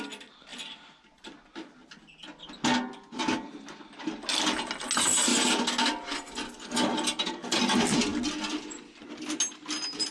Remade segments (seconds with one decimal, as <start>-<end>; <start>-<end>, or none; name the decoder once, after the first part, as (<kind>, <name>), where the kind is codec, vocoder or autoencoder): none